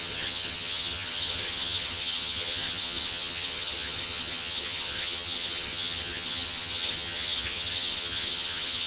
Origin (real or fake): fake